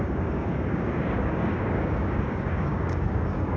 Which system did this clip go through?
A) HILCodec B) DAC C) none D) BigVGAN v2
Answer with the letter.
B